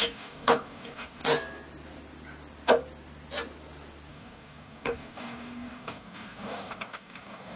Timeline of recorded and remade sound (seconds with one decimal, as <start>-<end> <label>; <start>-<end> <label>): 0.0-1.2 remade; 1.2-4.1 recorded; 4.1-7.6 remade